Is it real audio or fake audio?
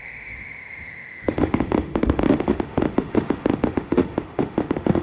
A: fake